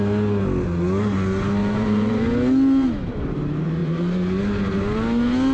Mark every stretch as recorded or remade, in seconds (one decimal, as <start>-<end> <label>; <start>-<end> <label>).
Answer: 0.0-1.6 recorded; 1.6-2.2 remade; 2.2-3.8 recorded; 3.8-4.4 remade; 4.4-5.5 recorded

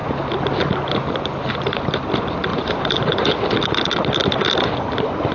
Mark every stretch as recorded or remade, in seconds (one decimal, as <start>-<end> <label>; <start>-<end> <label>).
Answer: 0.0-2.5 recorded; 2.5-3.3 remade; 3.3-5.3 recorded

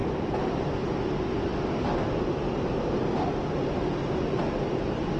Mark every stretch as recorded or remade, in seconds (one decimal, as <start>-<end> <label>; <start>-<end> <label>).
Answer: 0.0-0.8 remade; 0.8-5.2 recorded

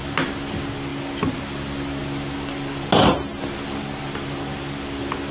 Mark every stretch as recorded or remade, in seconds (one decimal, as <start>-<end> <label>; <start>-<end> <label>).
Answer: 0.0-5.3 recorded

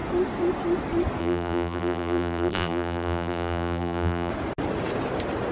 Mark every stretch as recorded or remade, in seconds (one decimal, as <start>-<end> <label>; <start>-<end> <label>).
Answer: 0.0-1.2 recorded; 1.2-4.3 remade; 4.3-5.5 recorded

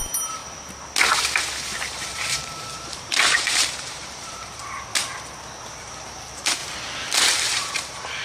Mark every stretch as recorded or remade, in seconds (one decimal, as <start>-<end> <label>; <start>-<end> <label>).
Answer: 0.0-0.4 remade; 0.4-1.4 recorded; 1.4-4.6 remade; 4.6-5.8 recorded; 5.8-6.6 remade; 6.6-7.2 recorded; 7.2-8.2 remade

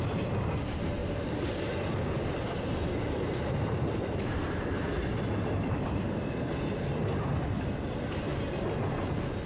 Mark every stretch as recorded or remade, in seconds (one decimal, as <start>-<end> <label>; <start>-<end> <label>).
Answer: 0.0-1.0 recorded; 1.0-1.8 remade; 1.8-2.8 recorded; 2.8-6.5 remade; 6.5-9.5 recorded

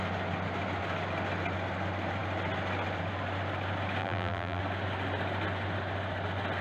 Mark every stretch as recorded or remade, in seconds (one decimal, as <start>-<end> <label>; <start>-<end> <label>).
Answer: 0.0-4.0 recorded; 4.0-4.6 remade; 4.6-6.6 recorded